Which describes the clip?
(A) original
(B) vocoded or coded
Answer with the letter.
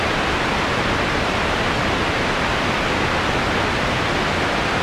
A